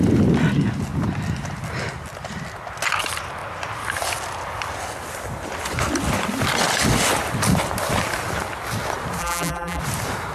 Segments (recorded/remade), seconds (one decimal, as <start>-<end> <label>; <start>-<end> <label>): 0.0-9.2 recorded; 9.2-9.8 remade; 9.8-10.3 recorded